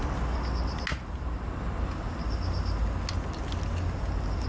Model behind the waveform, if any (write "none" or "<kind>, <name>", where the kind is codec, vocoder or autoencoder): none